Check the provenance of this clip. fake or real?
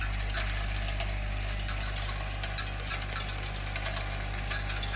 real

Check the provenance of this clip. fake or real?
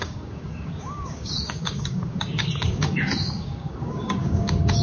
fake